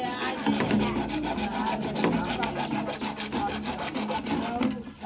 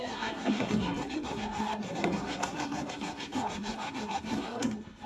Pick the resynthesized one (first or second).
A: second